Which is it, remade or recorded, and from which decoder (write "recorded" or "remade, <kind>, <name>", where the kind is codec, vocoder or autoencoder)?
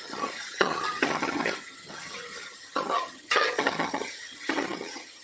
remade, vocoder, HiFi-GAN